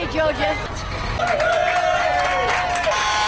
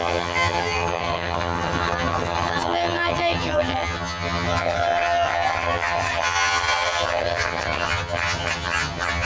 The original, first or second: first